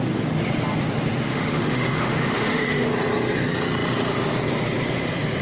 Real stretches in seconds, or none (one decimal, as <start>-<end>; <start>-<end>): 0.0-1.3; 2.9-5.4